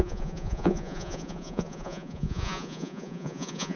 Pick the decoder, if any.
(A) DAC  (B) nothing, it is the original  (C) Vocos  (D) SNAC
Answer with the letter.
C